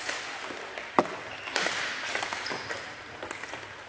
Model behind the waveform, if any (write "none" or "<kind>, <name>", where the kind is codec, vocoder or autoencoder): none